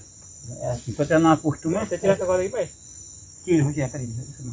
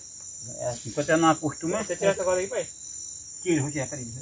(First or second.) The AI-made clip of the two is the first